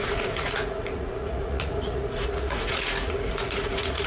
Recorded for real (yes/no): no